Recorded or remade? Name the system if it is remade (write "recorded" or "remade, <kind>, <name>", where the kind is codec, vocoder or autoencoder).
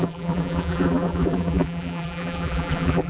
remade, vocoder, BigVGAN v2